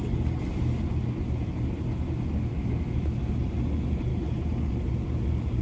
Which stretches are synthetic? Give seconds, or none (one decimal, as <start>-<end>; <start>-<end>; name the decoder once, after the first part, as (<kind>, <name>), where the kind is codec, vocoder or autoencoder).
2.5-3.2 (autoencoder, DAC-VAE)